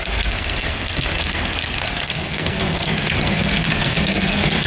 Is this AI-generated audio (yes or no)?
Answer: yes